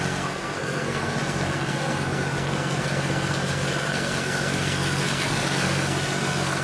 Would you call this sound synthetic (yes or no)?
yes